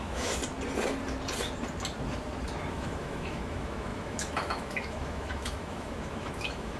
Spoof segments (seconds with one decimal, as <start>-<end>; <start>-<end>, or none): 0.0-0.4; 2.7-6.8